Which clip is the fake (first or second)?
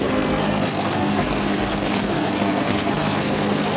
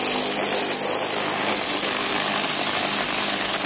first